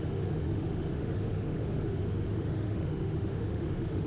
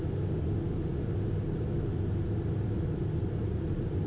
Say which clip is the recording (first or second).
second